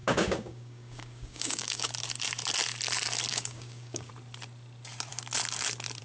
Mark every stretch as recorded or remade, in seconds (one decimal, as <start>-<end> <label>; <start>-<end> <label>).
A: 0.0-1.9 remade; 1.9-3.3 recorded; 3.3-4.1 remade; 4.1-6.0 recorded